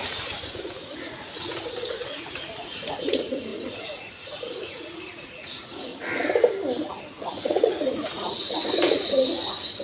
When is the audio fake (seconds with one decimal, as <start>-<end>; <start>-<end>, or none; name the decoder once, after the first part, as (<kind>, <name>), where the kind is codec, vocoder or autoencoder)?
0.0-5.9 (vocoder, Vocos); 6.9-9.8